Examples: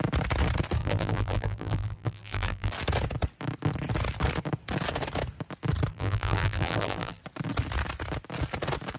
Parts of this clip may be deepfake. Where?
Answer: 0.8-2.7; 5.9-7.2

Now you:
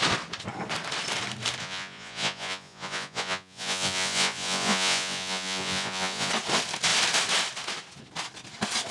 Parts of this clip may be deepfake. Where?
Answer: 1.6-6.3

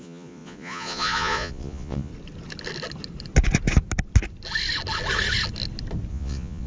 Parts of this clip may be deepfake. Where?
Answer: 0.0-2.1; 6.1-6.7

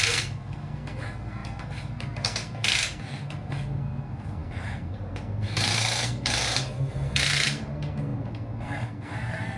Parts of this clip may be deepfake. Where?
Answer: 0.0-9.6